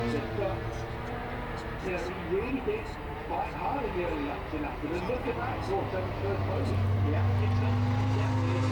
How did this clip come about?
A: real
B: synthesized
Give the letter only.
A